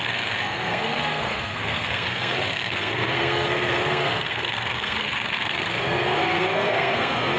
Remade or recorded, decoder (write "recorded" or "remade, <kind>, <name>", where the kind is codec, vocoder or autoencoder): remade, codec, SNAC